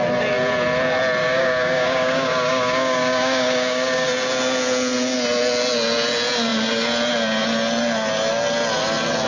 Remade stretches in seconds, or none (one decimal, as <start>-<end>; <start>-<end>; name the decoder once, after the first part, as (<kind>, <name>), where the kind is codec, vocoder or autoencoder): 1.2-4.1 (codec, DAC)